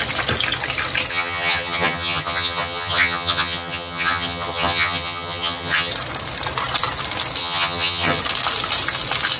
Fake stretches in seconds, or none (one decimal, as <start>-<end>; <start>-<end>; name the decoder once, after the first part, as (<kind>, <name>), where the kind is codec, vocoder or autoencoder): 1.1-5.9 (vocoder, HiFi-GAN); 7.4-8.2